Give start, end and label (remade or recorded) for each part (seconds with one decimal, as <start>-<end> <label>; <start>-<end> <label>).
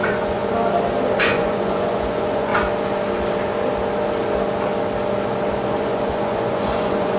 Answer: 0.0-0.4 remade; 0.4-1.2 recorded; 1.2-2.5 remade; 2.5-5.7 recorded; 5.7-7.2 remade